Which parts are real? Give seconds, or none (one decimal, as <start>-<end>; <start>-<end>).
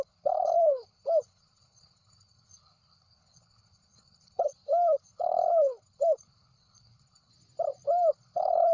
7.3-8.1